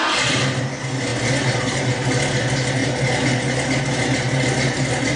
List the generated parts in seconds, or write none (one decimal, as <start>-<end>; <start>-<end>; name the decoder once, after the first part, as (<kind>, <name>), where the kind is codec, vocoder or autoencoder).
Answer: none